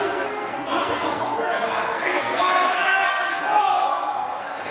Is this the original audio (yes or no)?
no